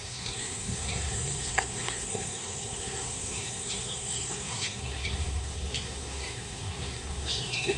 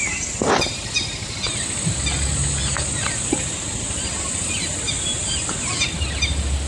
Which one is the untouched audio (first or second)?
second